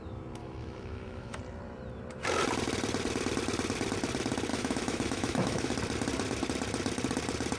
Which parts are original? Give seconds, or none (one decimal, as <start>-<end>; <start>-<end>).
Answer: 0.0-0.4; 1.4-4.5; 5.7-7.6